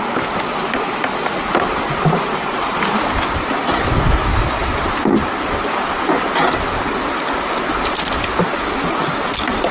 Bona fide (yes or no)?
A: yes